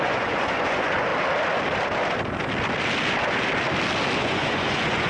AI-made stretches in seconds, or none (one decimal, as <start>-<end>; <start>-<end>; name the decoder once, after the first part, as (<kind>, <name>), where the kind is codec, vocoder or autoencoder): 0.0-1.1 (vocoder, Vocos); 4.2-5.1